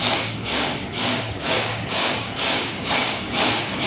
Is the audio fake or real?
fake